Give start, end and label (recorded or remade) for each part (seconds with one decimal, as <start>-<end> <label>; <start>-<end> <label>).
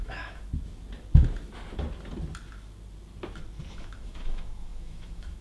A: 0.0-0.5 remade; 0.5-3.7 recorded; 3.7-5.4 remade